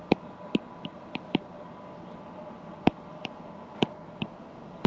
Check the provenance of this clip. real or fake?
real